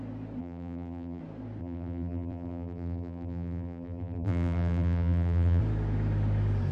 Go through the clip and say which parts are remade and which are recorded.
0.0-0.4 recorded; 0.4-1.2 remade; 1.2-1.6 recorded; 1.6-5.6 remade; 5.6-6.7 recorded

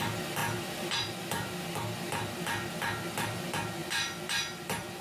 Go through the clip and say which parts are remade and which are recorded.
0.0-0.4 recorded; 0.4-3.4 remade; 3.4-3.8 recorded; 3.8-5.0 remade